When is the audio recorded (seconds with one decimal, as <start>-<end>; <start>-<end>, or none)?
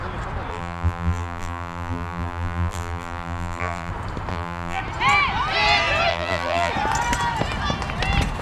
0.0-0.5; 3.9-4.3; 4.8-6.1; 6.7-8.4